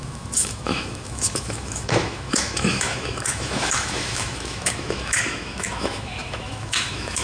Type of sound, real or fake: fake